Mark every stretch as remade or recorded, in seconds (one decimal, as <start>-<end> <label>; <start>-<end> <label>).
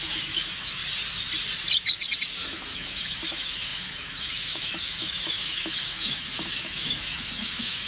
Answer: 0.0-0.8 remade; 0.8-2.4 recorded; 2.4-7.9 remade